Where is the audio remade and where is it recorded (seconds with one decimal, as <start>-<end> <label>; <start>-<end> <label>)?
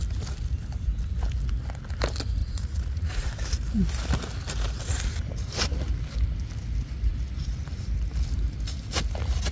0.0-2.4 recorded; 2.4-3.3 remade; 3.3-9.5 recorded